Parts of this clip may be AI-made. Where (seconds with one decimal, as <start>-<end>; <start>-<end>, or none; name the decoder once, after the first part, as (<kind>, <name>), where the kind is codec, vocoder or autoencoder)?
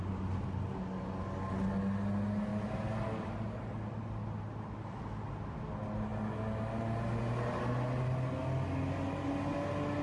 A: none